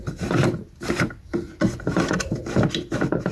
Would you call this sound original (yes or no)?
yes